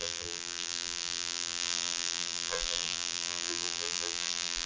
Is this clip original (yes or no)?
no